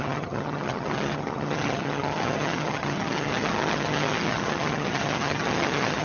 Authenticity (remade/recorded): remade